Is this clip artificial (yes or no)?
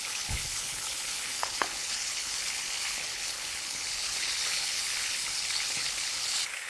yes